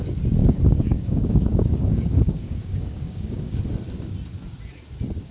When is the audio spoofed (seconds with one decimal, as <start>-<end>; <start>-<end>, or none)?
0.4-3.6